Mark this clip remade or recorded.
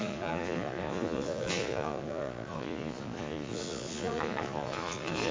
remade